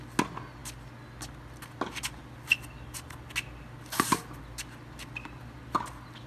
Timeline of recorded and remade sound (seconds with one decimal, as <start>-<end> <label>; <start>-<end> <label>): 0.0-6.3 recorded